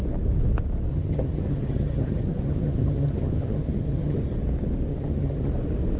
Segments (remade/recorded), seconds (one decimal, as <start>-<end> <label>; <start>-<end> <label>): 0.0-0.9 recorded; 0.9-4.2 remade; 4.2-4.9 recorded; 4.9-5.5 remade; 5.5-6.0 recorded